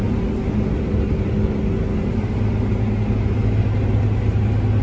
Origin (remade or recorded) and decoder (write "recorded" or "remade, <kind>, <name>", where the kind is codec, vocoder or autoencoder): recorded